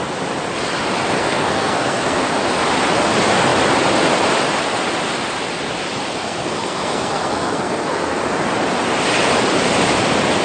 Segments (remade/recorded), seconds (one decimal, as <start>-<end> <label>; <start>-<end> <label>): 0.0-1.2 recorded; 1.2-2.3 remade; 2.3-6.2 recorded; 6.2-8.2 remade; 8.2-10.4 recorded